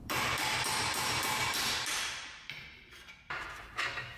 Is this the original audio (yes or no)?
no